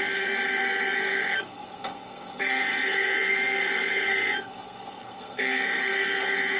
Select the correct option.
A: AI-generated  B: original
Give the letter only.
A